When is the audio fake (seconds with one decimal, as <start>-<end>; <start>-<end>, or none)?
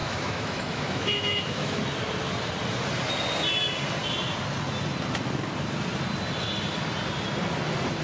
0.0-1.8